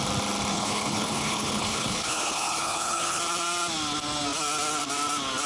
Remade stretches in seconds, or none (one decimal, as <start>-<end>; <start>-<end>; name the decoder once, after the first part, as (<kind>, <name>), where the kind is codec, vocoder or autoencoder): 0.5-3.2 (codec, HILCodec)